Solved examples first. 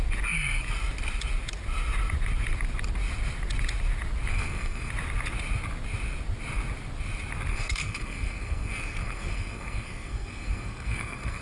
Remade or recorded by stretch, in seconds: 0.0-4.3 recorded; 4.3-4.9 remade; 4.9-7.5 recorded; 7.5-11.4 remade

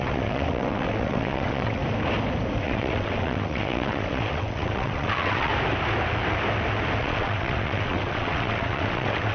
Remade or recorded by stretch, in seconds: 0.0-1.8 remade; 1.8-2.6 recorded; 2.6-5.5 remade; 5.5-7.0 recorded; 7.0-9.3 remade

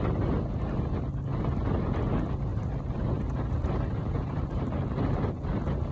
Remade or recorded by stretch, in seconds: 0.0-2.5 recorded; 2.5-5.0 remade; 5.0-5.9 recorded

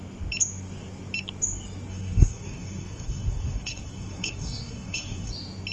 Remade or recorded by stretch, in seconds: 0.0-1.9 recorded; 1.9-5.3 remade; 5.3-5.7 recorded

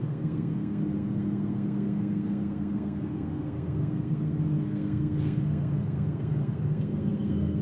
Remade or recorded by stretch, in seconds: 0.0-7.6 remade

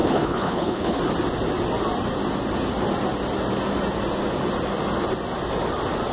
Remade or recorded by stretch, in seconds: 0.0-1.0 remade; 1.0-6.1 recorded